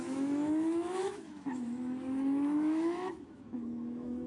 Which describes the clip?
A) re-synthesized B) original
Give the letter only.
A